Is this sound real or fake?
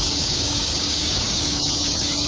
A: fake